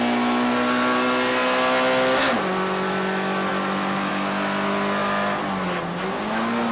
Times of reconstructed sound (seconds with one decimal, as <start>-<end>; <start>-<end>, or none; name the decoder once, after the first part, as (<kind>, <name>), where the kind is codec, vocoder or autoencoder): none